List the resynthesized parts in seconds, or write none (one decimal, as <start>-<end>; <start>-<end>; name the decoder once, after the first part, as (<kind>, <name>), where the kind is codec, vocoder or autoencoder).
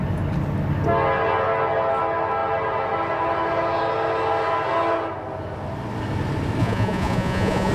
6.6-7.7 (vocoder, Vocos)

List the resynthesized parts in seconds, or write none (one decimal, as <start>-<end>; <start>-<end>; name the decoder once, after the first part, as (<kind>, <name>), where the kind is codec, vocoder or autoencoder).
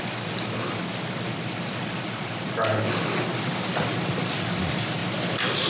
none